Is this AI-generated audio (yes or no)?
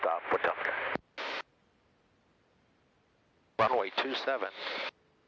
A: no